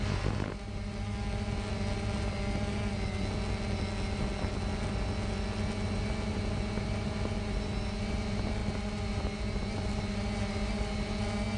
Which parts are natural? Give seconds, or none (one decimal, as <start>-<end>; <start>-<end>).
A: 0.0-11.6